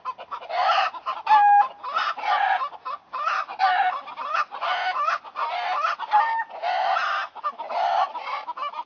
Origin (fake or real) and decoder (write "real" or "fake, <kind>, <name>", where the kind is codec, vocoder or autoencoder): real